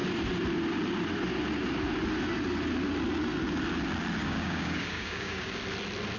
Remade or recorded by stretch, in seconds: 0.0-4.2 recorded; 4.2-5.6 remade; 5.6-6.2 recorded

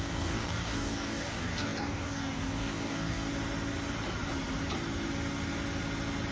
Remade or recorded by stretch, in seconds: 0.0-3.3 remade; 3.3-6.3 recorded

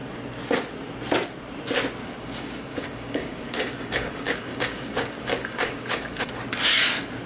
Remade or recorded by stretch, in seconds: 0.0-2.0 recorded; 2.0-6.3 remade; 6.3-7.3 recorded

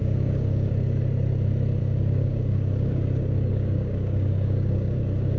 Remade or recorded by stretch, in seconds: 0.0-0.7 remade; 0.7-1.8 recorded; 1.8-5.0 remade; 5.0-5.4 recorded

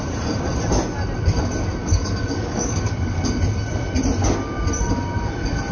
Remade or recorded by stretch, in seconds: 0.0-1.8 recorded; 1.8-3.2 remade; 3.2-5.7 recorded

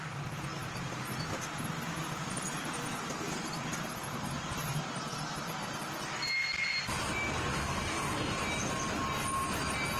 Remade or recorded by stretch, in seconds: 0.0-7.5 recorded; 7.5-8.4 remade; 8.4-10.0 recorded

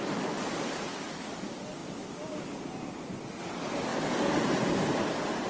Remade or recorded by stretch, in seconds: 0.0-5.5 recorded

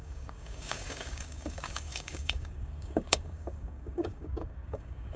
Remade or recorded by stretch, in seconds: 0.0-5.2 remade